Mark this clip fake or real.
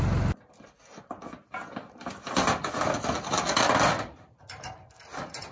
real